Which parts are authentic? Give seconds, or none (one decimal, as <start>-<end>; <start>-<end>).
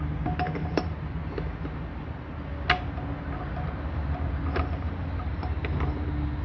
0.0-0.6; 1.2-6.4